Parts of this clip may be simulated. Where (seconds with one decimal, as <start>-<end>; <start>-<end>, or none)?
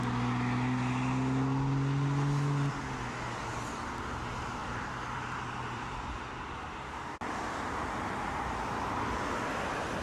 4.6-5.9